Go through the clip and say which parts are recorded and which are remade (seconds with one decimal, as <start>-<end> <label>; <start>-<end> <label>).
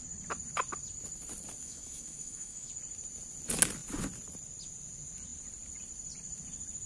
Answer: 0.0-1.6 recorded; 1.6-2.7 remade; 2.7-6.9 recorded